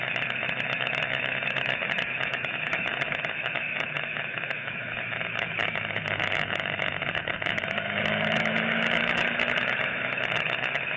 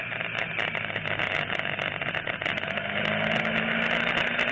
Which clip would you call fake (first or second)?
first